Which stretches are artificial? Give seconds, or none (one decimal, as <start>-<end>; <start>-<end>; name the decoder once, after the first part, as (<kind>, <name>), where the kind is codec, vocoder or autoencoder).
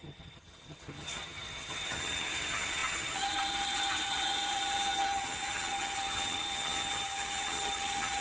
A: 0.0-8.2 (vocoder, HiFi-GAN)